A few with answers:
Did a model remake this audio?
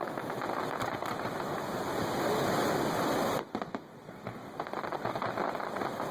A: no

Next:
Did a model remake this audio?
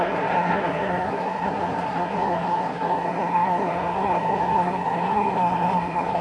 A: yes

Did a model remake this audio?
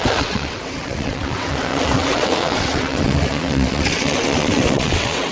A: yes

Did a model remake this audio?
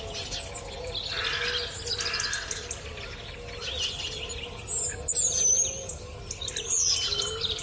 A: no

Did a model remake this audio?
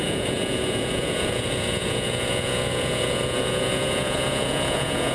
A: yes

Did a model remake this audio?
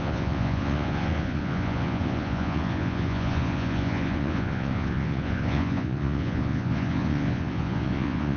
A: yes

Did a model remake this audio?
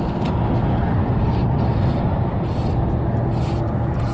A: no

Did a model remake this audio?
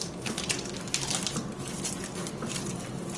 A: no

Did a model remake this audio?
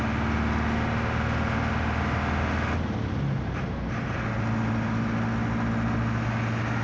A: no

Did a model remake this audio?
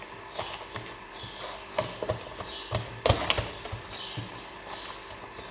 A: no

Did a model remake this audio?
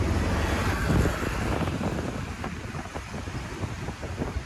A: no